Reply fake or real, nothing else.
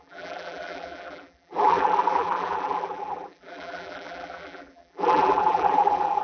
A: fake